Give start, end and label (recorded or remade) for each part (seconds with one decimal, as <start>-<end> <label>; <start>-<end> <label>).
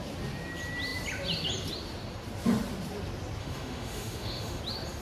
0.0-3.4 recorded; 3.4-4.6 remade; 4.6-5.0 recorded